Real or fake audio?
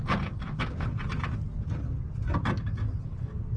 real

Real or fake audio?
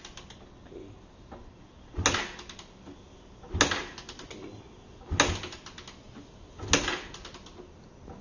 real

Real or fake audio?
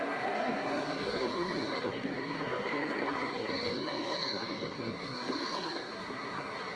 fake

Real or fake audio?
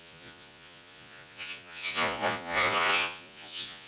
fake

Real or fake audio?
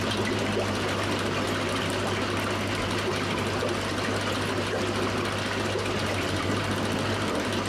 real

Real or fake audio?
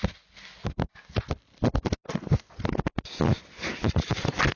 real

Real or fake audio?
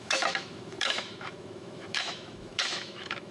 fake